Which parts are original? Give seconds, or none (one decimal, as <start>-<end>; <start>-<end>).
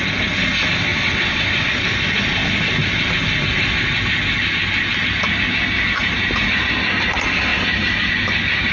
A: 0.0-0.9; 1.7-8.7